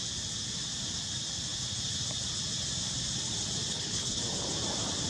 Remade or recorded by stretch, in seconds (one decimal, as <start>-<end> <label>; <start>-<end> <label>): 0.0-3.7 recorded; 3.7-4.2 remade; 4.2-5.1 recorded